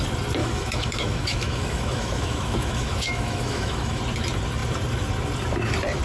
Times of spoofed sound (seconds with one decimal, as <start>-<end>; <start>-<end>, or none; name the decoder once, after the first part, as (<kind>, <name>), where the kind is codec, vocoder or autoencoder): 0.4-4.0 (autoencoder, DAC-VAE)